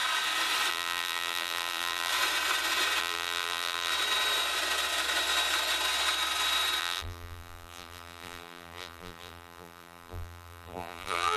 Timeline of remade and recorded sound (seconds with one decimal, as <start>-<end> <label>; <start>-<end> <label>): 0.0-0.7 recorded; 0.7-2.1 remade; 2.1-3.0 recorded; 3.0-3.9 remade; 3.9-6.8 recorded; 6.8-11.4 remade